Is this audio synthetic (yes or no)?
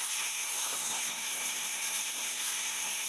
yes